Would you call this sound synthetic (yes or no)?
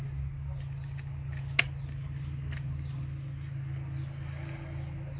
no